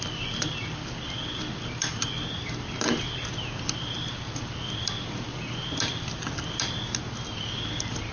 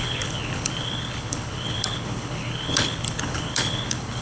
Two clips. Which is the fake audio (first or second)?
second